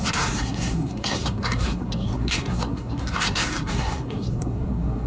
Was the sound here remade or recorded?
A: remade